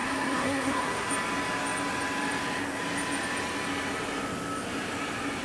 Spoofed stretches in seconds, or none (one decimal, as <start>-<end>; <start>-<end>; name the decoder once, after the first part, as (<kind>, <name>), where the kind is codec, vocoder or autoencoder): 0.0-1.1 (codec, SNAC)